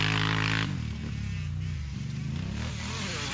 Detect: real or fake real